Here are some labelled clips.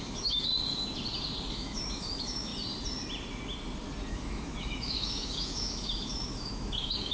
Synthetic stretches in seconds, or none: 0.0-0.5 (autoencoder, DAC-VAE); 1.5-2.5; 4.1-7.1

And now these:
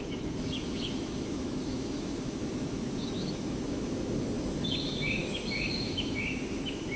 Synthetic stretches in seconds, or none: 0.0-7.0 (autoencoder, DAC-VAE)

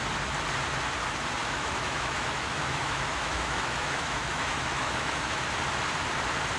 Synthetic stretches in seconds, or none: 1.4-5.4 (autoencoder, DAC-VAE)

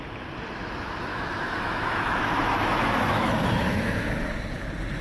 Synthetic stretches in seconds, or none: 1.1-4.1 (autoencoder, DAC-VAE)

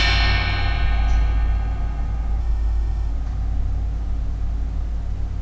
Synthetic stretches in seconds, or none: 2.4-3.1 (autoencoder, DAC-VAE)

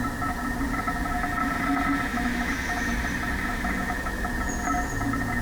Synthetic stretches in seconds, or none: 2.1-2.9 (autoencoder, DAC-VAE); 3.5-4.3

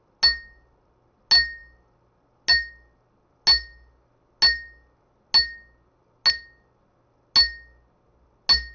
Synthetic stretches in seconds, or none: none

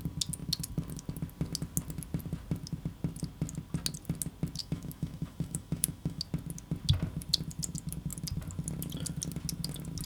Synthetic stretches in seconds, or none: 4.6-6.2 (autoencoder, DAC-VAE)